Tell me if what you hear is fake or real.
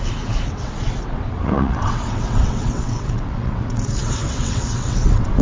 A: fake